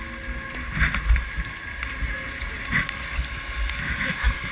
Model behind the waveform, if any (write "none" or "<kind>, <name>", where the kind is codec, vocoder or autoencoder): none